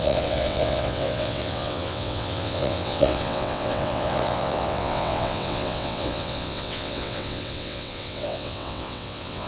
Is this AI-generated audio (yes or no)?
yes